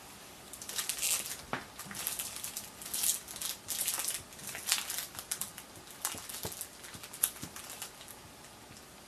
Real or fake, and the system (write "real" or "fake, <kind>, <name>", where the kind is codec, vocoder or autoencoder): real